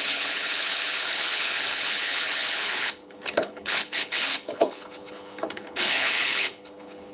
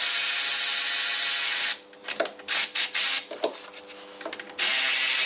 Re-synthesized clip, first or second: first